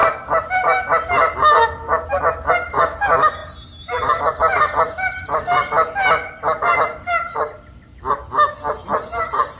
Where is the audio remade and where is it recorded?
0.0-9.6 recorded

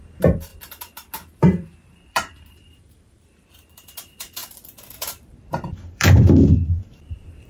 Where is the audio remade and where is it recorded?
0.0-0.5 remade; 0.5-1.4 recorded; 1.4-7.5 remade